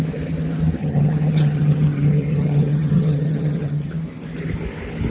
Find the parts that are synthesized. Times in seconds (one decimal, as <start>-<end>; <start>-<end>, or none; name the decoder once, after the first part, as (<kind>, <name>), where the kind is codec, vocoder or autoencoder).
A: 0.8-3.9 (vocoder, HiFi-GAN)